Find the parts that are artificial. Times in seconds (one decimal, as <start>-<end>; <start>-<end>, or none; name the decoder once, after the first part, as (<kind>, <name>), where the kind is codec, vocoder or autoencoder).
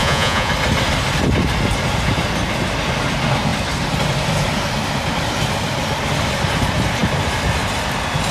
0.0-0.5 (vocoder, Vocos)